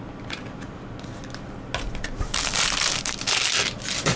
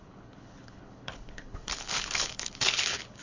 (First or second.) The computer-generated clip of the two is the second